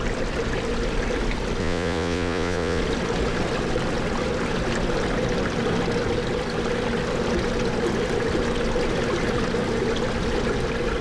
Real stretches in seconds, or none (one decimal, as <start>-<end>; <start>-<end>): 0.0-1.6; 2.8-11.0